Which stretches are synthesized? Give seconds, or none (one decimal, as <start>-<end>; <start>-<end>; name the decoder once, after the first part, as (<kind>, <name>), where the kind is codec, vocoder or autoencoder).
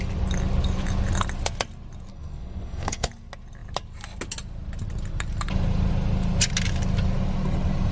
2.1-3.1 (codec, SNAC)